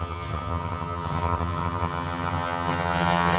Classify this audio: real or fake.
fake